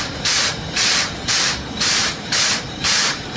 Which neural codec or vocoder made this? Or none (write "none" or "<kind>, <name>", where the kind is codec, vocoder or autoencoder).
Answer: vocoder, BigVGAN v2